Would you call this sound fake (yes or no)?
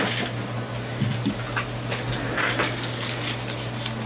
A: no